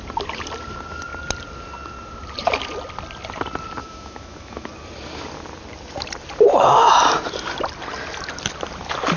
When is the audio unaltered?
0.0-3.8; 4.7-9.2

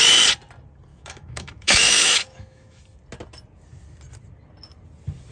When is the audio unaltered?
0.0-0.9; 2.8-5.3